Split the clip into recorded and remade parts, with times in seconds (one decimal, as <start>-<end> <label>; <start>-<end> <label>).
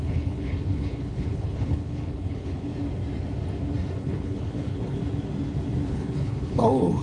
0.0-2.7 remade; 2.7-4.0 recorded; 4.0-5.0 remade; 5.0-5.9 recorded; 5.9-7.0 remade